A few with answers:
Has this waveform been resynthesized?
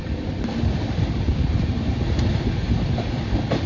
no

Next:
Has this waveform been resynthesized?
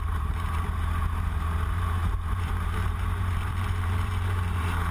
yes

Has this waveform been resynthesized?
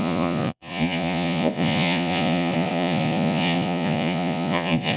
yes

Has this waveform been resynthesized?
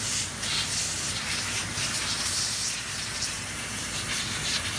no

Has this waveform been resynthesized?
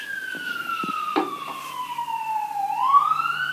no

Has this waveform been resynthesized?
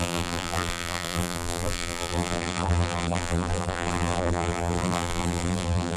yes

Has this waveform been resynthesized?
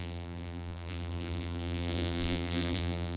yes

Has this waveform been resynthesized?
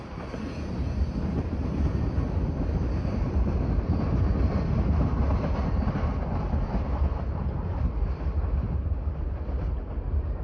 no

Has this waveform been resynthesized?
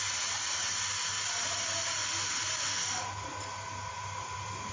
no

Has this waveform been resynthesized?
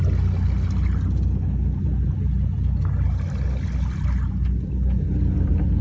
no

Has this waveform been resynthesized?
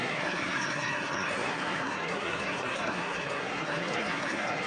yes